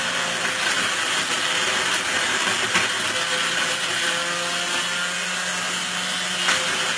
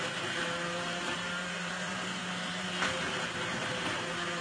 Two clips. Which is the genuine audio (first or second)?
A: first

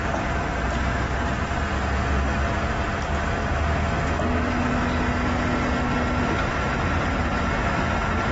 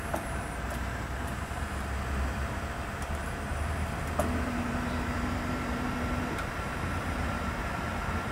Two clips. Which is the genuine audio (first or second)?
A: first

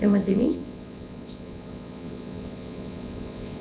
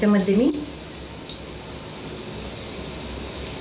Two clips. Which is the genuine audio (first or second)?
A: second